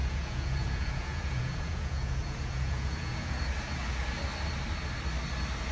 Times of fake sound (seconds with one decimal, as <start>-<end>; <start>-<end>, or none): 0.0-3.4